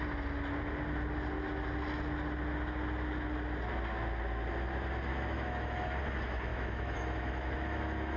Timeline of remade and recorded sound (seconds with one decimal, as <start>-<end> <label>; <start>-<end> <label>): 0.0-5.1 recorded; 5.1-6.0 remade; 6.0-6.5 recorded; 6.5-8.2 remade

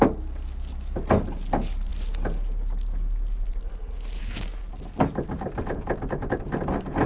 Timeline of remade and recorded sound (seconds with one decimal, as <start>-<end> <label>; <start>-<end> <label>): 0.0-7.1 recorded

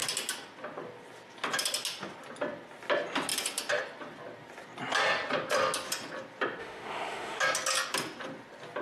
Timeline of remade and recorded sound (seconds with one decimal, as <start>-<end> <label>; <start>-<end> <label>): 0.0-6.6 recorded; 6.6-7.4 remade; 7.4-8.8 recorded

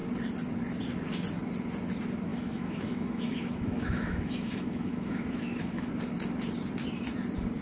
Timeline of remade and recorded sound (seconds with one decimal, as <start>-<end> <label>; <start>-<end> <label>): 0.0-2.3 recorded; 2.3-5.9 remade; 5.9-7.6 recorded